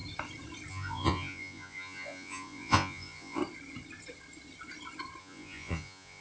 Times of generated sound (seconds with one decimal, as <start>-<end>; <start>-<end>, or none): 0.7-3.4; 5.2-6.2